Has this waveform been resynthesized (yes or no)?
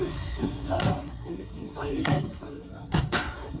yes